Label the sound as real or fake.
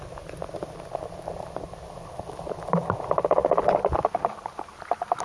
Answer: real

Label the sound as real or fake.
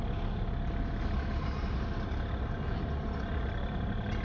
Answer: real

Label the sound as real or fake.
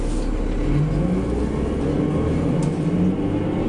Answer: real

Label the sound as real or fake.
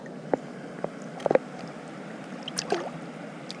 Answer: real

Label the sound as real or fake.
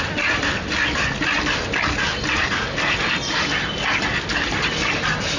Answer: real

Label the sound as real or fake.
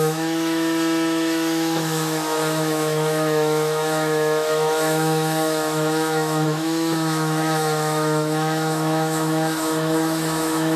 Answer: fake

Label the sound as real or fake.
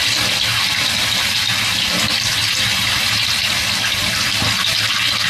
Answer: real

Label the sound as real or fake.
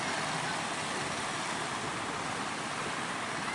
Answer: real